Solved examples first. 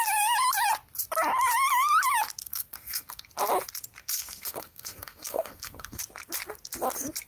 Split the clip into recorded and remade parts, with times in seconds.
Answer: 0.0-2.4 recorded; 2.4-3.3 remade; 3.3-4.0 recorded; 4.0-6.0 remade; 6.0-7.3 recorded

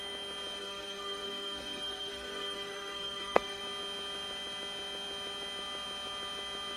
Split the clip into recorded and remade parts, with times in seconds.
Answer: 0.0-0.6 recorded; 0.6-3.6 remade; 3.6-6.8 recorded

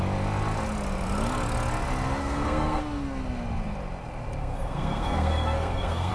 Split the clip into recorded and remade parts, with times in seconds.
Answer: 0.0-2.2 recorded; 2.2-2.8 remade; 2.8-4.4 recorded; 4.4-6.1 remade

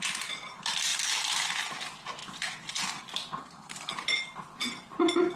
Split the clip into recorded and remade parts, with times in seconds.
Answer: 0.0-3.4 recorded; 3.4-3.9 remade; 3.9-5.4 recorded

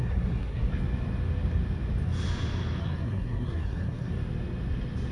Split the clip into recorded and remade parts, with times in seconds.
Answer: 0.0-0.7 remade; 0.7-2.8 recorded; 2.8-4.1 remade; 4.1-5.1 recorded

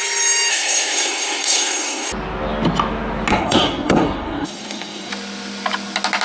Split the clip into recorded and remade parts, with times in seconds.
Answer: 0.0-0.5 recorded; 0.5-2.1 remade; 2.1-3.3 recorded; 3.3-5.1 remade; 5.1-6.2 recorded